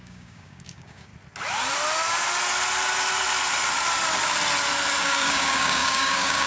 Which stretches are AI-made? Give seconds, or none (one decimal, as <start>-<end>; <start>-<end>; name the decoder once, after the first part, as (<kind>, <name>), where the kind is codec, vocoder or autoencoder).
0.0-1.1 (codec, DAC); 5.0-6.5